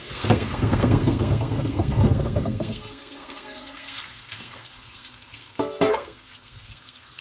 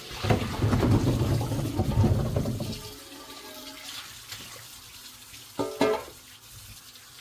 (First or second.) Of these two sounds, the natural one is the second